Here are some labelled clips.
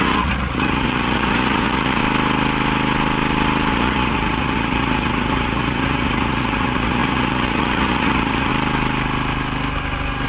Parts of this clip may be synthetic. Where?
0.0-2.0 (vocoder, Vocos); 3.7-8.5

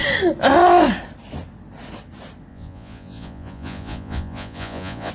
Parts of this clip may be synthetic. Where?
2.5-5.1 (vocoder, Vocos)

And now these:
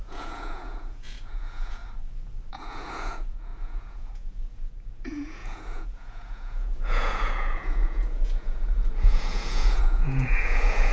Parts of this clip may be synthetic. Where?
0.0-1.8 (vocoder, Vocos); 2.5-10.9